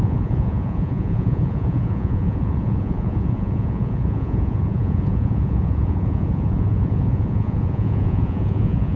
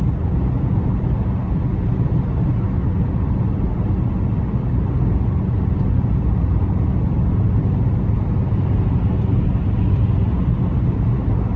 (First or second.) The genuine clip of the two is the second